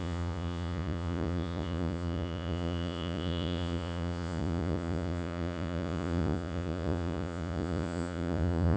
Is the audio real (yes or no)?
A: no